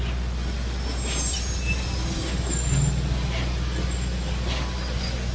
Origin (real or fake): real